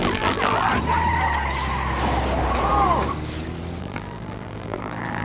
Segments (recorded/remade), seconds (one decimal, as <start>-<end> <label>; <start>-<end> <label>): 0.0-0.7 remade; 0.7-3.8 recorded; 3.8-5.2 remade